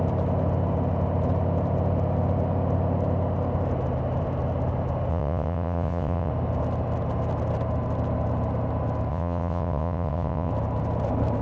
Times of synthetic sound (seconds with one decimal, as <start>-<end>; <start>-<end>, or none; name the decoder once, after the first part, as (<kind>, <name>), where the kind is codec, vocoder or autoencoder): 5.1-6.3 (vocoder, WaveNeXt); 9.1-10.5